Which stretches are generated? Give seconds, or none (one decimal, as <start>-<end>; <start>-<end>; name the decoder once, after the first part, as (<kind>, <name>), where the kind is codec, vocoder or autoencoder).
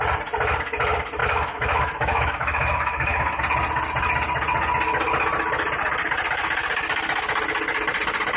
1.2-3.4 (autoencoder, DAC-VAE)